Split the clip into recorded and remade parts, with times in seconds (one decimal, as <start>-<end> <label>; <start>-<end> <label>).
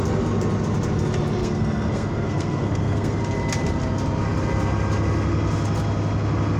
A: 0.0-1.4 recorded; 1.4-3.2 remade; 3.2-6.6 recorded